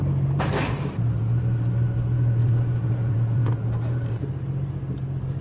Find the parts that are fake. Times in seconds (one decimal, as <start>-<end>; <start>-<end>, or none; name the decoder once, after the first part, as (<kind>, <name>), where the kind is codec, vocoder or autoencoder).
2.4-3.5 (vocoder, Vocos)